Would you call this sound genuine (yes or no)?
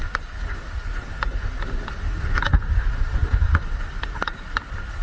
yes